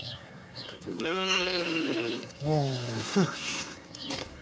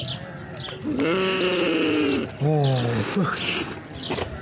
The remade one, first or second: first